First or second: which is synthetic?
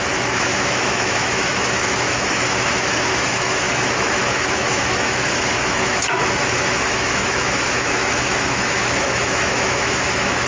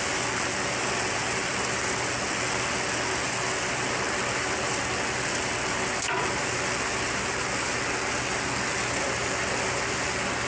first